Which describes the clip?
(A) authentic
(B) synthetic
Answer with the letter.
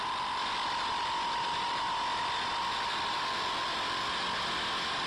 A